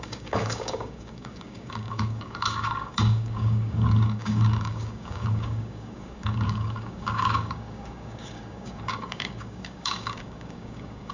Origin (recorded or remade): remade